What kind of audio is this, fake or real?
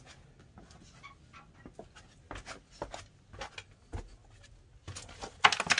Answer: real